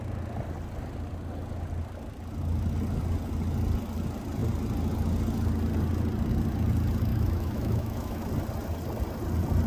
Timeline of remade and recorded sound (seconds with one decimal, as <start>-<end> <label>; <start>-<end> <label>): 0.0-7.1 recorded; 7.1-8.3 remade; 8.3-9.7 recorded